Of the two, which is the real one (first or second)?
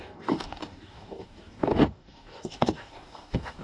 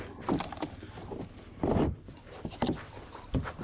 second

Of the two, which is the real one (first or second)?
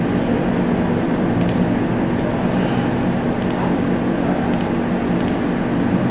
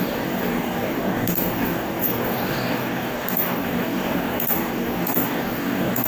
first